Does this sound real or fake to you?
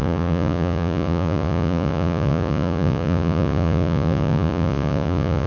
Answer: fake